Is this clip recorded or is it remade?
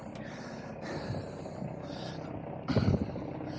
recorded